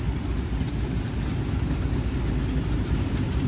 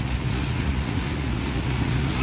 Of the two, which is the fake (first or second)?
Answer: second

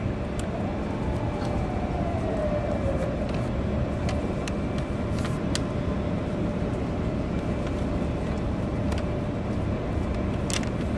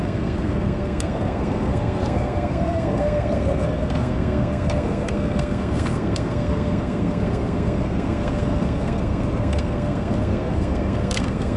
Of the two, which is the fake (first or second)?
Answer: second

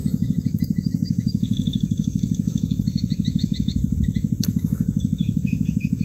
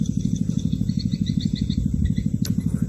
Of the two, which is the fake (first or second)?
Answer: first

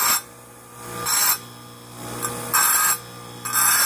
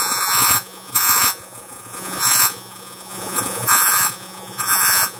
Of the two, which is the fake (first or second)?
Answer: second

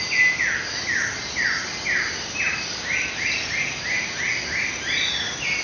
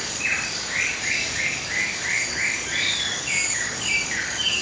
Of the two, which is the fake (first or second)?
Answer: second